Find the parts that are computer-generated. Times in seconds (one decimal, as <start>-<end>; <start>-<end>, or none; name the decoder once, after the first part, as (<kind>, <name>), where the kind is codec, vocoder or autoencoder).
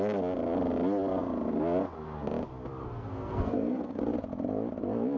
2.8-4.0 (codec, SNAC)